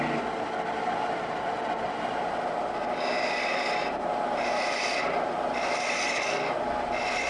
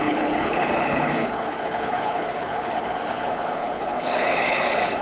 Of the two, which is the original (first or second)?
first